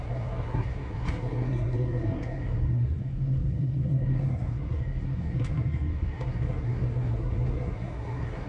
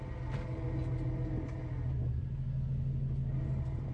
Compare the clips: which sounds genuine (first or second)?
second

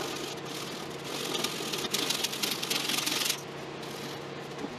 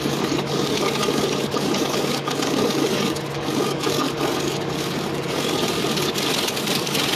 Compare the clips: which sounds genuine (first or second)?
first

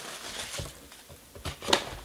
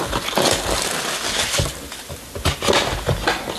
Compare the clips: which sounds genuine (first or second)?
second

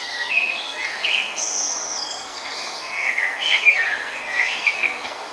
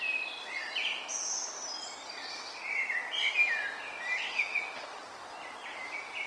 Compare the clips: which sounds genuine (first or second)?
second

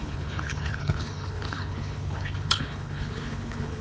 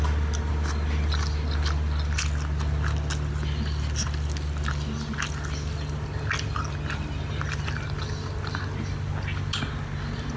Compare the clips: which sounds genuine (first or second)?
second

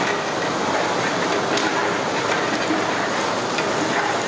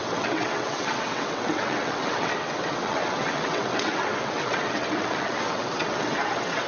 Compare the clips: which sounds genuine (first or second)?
first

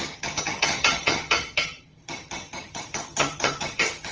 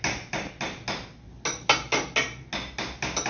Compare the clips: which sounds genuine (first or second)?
second